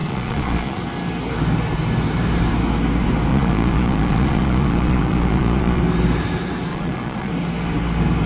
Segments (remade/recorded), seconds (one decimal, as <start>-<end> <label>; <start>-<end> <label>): 0.0-0.8 remade; 0.8-3.3 recorded; 3.3-5.8 remade; 5.8-6.7 recorded; 6.7-7.3 remade; 7.3-8.3 recorded